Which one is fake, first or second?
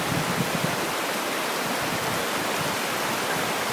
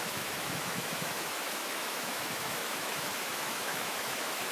second